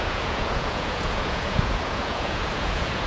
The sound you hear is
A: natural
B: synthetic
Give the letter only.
B